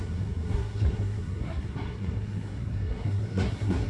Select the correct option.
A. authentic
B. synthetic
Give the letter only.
B